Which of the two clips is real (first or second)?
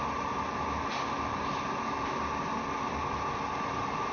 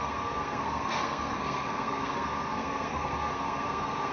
first